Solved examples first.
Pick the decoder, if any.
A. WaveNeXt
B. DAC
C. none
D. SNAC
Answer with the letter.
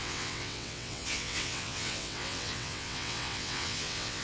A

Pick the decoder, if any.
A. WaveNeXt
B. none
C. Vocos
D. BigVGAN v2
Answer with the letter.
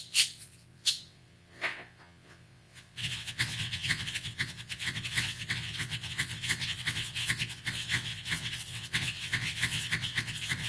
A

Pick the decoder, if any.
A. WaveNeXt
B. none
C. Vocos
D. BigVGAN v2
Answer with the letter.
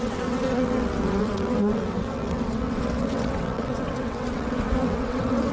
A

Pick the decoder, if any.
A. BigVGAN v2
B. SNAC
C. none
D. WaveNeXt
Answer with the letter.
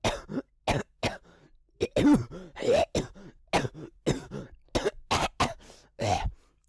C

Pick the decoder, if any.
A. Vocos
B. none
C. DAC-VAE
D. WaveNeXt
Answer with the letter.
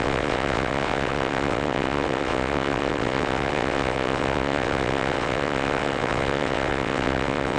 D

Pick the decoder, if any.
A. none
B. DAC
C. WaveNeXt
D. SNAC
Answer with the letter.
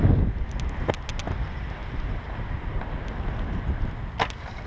A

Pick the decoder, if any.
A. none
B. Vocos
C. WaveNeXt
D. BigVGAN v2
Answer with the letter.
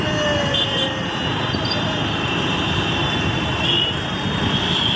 A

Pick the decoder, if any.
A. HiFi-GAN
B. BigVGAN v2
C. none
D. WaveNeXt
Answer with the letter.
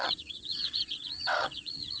D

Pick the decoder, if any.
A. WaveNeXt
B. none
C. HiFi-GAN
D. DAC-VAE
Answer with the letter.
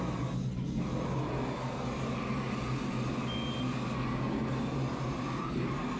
B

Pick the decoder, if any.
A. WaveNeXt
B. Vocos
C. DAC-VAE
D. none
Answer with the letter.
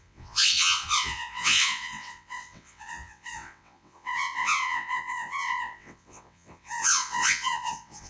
A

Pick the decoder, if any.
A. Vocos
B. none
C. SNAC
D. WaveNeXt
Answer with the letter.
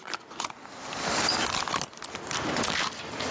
B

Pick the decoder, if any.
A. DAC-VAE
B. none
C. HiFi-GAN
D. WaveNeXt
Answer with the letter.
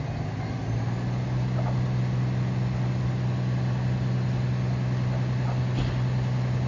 B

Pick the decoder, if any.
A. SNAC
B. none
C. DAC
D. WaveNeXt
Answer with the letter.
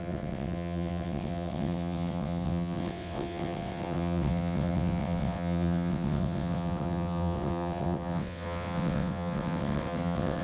D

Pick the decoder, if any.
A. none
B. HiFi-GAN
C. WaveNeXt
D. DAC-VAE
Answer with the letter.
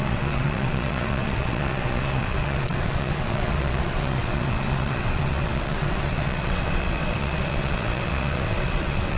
C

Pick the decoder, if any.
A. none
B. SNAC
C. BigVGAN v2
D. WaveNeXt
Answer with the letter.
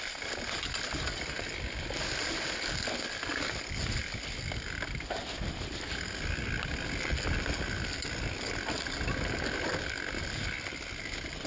A